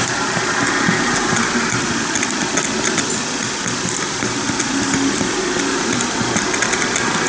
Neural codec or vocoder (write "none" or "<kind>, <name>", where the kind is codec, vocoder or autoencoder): none